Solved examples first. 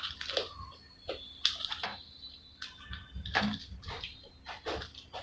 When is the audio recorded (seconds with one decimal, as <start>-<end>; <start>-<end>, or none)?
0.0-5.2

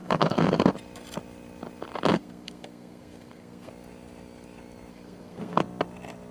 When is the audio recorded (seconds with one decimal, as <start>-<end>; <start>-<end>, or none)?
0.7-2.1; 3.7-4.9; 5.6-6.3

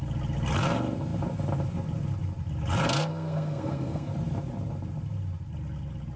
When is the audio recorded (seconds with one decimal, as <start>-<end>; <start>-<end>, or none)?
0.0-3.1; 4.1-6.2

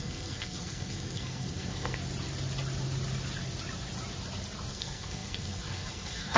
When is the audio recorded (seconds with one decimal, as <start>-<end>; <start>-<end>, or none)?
2.0-4.7

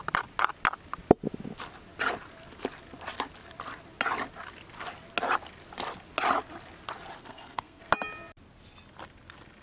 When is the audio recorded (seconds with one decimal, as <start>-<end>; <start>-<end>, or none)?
0.0-7.2; 7.8-9.6

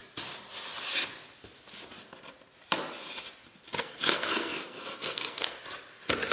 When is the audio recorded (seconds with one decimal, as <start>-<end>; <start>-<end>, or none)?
0.0-3.8; 5.6-6.3

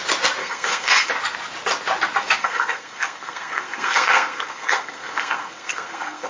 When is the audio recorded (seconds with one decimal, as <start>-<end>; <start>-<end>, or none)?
0.0-0.4; 1.1-2.4